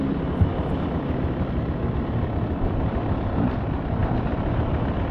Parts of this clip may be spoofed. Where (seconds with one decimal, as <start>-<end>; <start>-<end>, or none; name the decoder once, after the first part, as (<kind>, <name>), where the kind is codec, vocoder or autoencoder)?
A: none